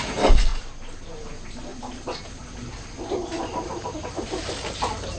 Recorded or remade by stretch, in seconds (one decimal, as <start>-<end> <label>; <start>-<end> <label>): 0.0-5.2 recorded